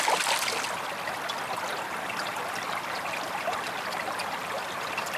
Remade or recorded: recorded